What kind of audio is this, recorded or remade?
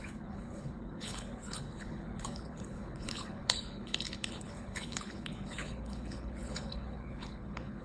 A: remade